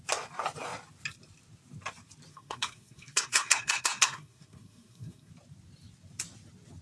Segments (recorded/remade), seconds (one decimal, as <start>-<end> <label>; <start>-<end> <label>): 0.0-2.3 recorded; 2.3-5.3 remade; 5.3-6.8 recorded